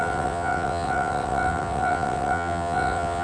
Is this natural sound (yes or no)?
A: no